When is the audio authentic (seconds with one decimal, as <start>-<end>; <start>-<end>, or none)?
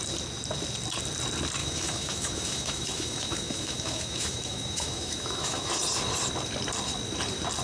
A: 0.0-1.6; 5.7-7.6